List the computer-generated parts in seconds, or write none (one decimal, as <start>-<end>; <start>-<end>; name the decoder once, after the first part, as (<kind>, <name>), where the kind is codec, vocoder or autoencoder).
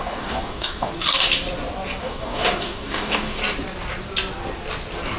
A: 0.0-0.9 (codec, DAC); 2.0-3.4